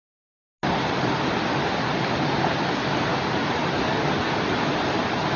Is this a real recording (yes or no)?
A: yes